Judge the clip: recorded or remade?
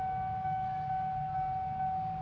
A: recorded